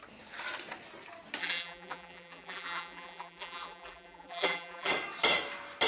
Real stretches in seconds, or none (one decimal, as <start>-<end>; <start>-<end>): 0.0-1.4; 4.9-5.9